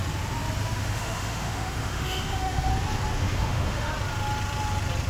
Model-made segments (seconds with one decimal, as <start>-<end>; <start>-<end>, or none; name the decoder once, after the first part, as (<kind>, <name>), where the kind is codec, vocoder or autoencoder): 0.8-2.7 (autoencoder, DAC-VAE); 3.2-3.9